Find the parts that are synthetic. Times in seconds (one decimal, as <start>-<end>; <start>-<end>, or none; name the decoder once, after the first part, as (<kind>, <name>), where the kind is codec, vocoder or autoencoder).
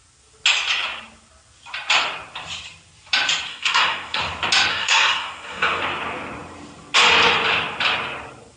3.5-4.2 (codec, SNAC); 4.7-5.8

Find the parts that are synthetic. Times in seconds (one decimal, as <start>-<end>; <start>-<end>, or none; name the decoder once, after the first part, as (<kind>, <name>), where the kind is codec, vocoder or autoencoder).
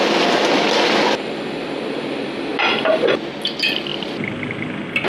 none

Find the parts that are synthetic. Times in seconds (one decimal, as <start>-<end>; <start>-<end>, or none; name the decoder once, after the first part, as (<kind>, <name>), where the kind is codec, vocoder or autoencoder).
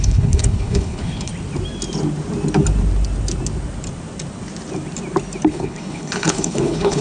0.0-1.3 (codec, HILCodec); 5.5-7.0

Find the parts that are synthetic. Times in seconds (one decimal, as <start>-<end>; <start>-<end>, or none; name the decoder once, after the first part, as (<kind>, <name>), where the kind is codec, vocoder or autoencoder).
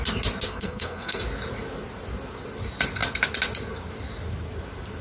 0.5-1.2 (codec, SNAC)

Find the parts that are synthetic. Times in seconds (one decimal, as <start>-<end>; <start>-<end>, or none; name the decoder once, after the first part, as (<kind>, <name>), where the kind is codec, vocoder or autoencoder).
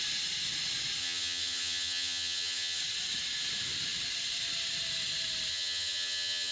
1.0-2.8 (vocoder, HiFi-GAN); 5.5-6.5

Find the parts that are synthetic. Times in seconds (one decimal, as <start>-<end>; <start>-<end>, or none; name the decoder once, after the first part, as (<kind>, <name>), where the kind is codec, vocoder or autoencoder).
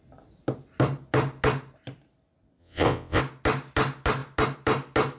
2.6-3.2 (vocoder, WaveNeXt)